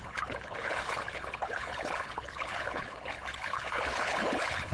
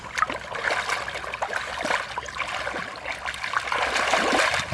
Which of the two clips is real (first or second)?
second